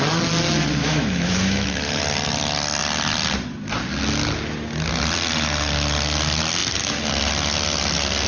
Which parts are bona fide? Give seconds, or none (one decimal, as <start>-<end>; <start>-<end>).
0.0-0.8; 2.0-8.3